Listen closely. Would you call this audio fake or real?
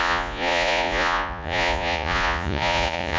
fake